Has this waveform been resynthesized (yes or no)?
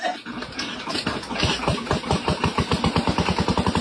no